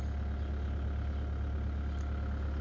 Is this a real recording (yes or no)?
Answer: yes